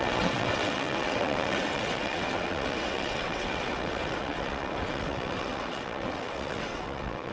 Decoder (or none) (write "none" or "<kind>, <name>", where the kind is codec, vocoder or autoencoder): vocoder, WaveNeXt